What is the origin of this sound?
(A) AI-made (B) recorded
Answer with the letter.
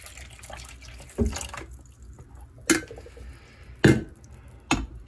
B